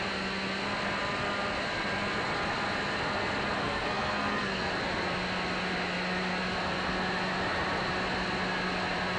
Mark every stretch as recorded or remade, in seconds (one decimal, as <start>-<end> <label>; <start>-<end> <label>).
0.0-3.6 recorded; 3.6-4.7 remade; 4.7-9.2 recorded